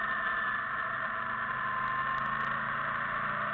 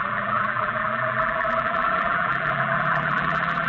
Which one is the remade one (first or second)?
second